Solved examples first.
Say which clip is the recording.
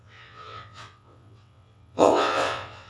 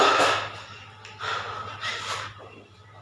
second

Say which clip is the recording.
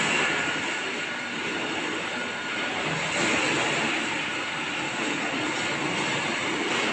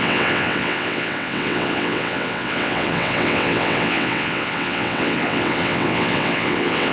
first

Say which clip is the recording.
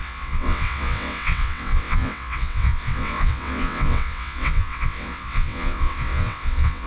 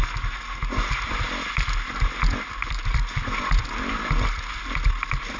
second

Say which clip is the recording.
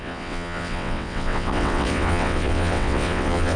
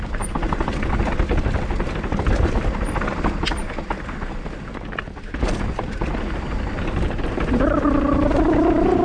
second